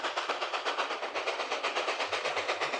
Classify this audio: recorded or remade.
remade